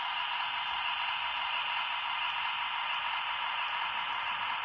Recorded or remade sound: recorded